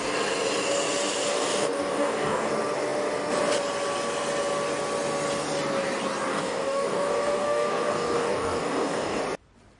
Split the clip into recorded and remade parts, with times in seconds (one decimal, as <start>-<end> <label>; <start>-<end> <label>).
0.0-1.3 recorded; 1.3-2.5 remade; 2.5-6.3 recorded; 6.3-9.2 remade; 9.2-9.8 recorded